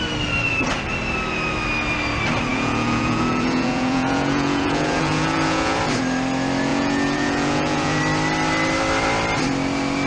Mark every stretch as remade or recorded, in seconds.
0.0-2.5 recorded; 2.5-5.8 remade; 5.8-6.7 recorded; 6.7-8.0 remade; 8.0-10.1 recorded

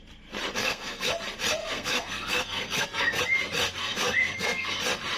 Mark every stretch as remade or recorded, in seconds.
0.0-0.6 recorded; 0.6-1.1 remade; 1.1-1.6 recorded; 1.6-3.2 remade; 3.2-3.8 recorded; 3.8-4.8 remade; 4.8-5.2 recorded

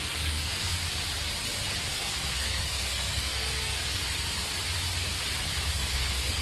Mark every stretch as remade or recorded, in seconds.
0.0-0.8 remade; 0.8-1.9 recorded; 1.9-4.0 remade; 4.0-5.7 recorded; 5.7-6.4 remade

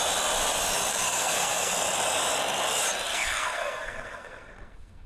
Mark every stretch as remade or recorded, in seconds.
0.0-0.9 recorded; 0.9-1.7 remade; 1.7-3.1 recorded; 3.1-5.1 remade

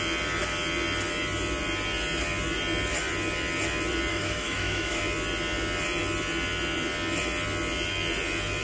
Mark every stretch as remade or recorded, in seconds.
0.0-4.1 recorded; 4.1-5.0 remade; 5.0-8.6 recorded

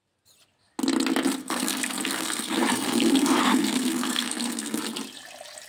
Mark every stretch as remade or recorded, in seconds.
0.0-1.4 recorded; 1.4-4.8 remade; 4.8-5.7 recorded